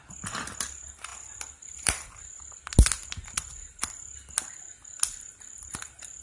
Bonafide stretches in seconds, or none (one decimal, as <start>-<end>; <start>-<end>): 0.0-6.2